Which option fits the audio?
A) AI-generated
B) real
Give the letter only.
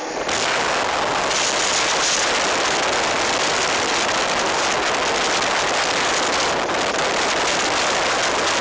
B